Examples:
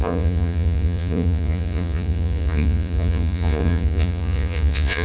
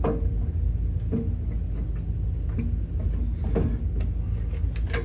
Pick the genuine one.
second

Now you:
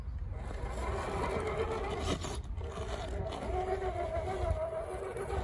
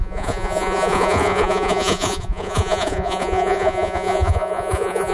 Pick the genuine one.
first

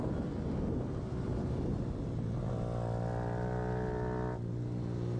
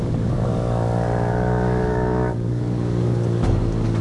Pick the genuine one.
first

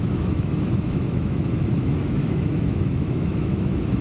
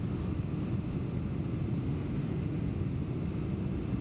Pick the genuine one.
second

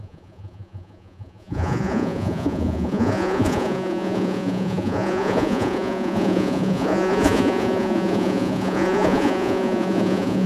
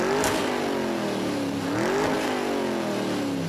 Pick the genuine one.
second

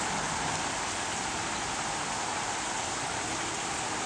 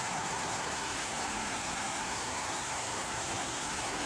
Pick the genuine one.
first